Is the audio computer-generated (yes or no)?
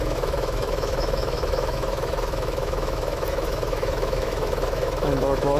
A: yes